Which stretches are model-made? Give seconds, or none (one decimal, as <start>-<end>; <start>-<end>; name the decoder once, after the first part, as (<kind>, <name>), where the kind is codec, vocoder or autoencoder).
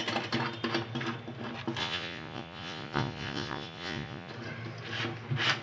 1.8-4.3 (vocoder, Vocos)